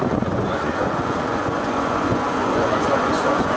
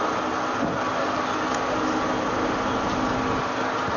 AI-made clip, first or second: first